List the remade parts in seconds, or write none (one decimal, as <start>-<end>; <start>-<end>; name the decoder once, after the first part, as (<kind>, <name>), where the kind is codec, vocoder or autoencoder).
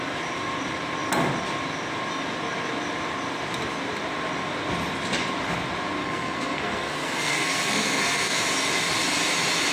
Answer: 6.0-8.4 (codec, SNAC)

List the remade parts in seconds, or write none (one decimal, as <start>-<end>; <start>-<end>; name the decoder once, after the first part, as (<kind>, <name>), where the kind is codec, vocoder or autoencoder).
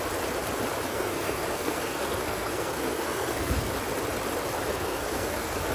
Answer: 0.9-3.7 (codec, SNAC); 4.7-5.7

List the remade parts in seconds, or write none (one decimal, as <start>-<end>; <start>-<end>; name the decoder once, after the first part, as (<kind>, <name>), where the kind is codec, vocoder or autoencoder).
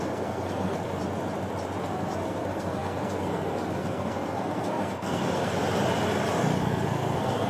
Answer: 0.0-1.0 (codec, SNAC); 1.8-5.6; 6.6-7.5